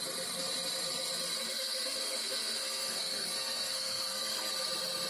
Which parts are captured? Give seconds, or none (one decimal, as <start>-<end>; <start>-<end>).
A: 0.0-1.4; 4.5-5.1

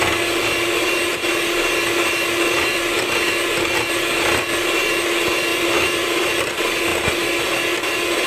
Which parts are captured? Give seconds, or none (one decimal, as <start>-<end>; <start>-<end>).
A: 0.0-5.5; 6.3-8.3

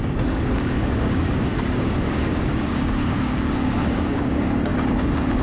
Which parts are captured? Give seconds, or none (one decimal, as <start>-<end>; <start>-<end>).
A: none

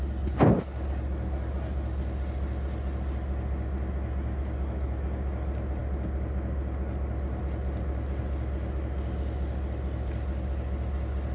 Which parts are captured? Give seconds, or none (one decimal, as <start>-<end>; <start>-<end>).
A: 0.0-11.3

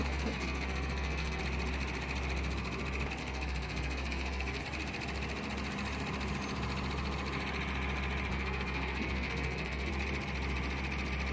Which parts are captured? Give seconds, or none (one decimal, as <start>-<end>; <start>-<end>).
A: 1.4-3.2; 4.6-8.3; 9.9-11.3

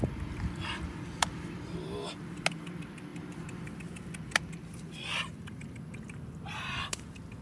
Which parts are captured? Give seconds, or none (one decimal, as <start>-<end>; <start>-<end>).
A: 0.0-7.4